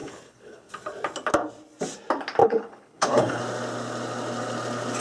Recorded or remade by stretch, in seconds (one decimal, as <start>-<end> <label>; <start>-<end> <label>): 0.0-0.7 remade; 0.7-2.4 recorded; 2.4-3.4 remade; 3.4-5.0 recorded